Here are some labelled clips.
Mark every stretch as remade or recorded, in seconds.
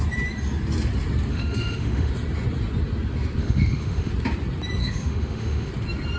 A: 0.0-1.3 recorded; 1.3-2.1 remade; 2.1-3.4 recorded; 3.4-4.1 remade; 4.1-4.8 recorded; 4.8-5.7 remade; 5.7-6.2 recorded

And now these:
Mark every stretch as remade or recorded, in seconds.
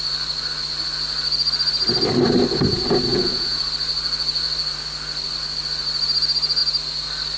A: 0.0-3.1 recorded; 3.1-3.6 remade; 3.6-7.4 recorded